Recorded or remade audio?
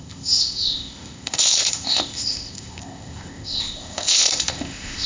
remade